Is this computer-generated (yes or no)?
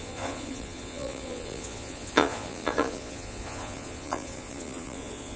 yes